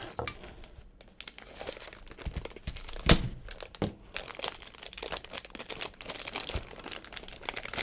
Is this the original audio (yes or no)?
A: yes